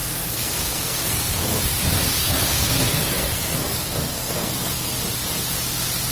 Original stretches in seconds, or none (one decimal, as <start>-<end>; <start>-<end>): 1.6-2.2; 4.9-6.1